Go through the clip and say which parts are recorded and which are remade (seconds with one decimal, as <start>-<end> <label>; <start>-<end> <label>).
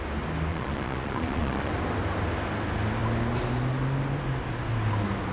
0.0-0.5 recorded; 0.5-1.7 remade; 1.7-5.3 recorded